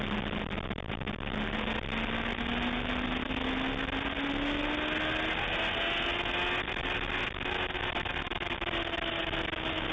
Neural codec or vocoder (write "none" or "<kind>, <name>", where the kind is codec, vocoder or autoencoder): none